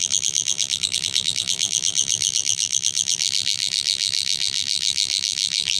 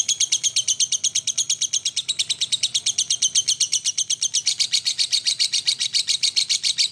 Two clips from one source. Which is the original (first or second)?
second